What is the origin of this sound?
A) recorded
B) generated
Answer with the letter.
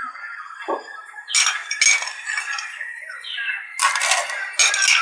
A